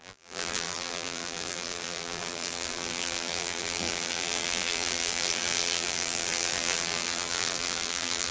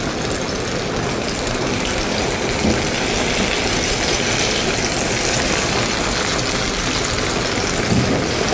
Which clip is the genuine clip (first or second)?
second